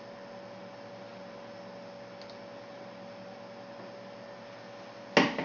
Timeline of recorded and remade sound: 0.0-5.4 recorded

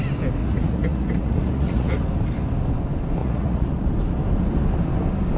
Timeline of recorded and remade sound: 0.0-0.4 recorded; 0.4-2.0 remade; 2.0-3.2 recorded; 3.2-3.7 remade; 3.7-5.4 recorded

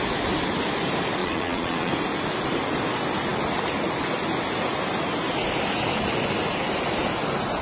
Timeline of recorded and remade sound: 0.0-1.2 recorded; 1.2-1.9 remade; 1.9-7.6 recorded

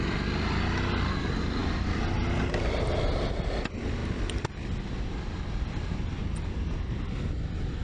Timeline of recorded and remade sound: 0.0-7.8 recorded

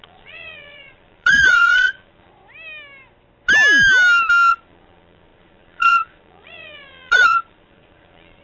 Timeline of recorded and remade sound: 0.0-2.3 remade; 2.3-4.5 recorded; 4.5-8.4 remade